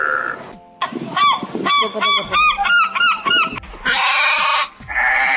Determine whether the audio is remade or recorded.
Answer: recorded